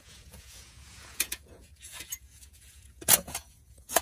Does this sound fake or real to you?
fake